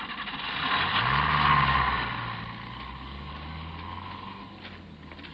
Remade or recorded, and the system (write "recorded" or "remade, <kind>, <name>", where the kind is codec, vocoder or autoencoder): recorded